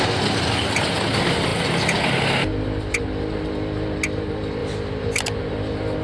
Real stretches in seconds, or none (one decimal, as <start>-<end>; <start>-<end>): 0.0-4.6; 5.4-6.0